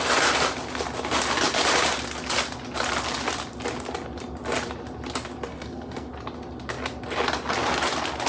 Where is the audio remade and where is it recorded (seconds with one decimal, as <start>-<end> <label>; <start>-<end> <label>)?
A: 0.0-5.5 recorded; 5.5-6.1 remade; 6.1-8.3 recorded